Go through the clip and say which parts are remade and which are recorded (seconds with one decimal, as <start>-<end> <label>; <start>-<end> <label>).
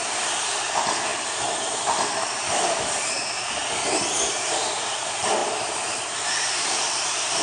0.0-3.6 remade; 3.6-4.3 recorded; 4.3-7.4 remade